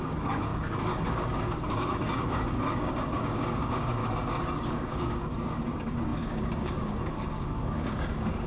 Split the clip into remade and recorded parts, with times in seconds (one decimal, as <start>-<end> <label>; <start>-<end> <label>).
0.0-4.0 remade; 4.0-4.7 recorded; 4.7-8.5 remade